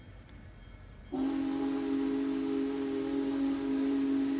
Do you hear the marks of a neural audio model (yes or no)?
no